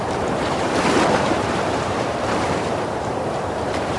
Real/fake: fake